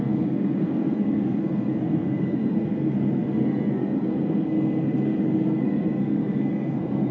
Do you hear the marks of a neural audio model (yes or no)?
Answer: yes